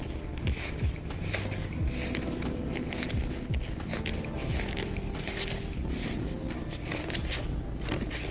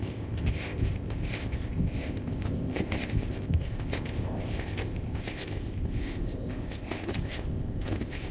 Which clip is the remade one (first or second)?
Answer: second